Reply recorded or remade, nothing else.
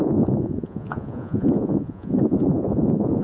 remade